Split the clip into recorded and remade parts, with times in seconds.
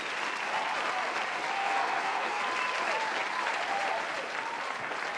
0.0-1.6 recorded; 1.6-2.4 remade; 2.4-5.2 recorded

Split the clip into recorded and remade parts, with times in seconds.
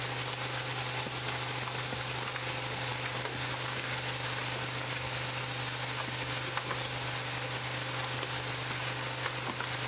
0.0-9.9 recorded